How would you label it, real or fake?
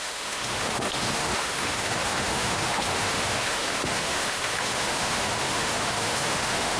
fake